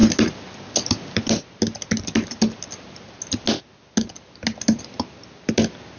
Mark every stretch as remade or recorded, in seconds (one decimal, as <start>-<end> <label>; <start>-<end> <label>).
0.0-6.0 recorded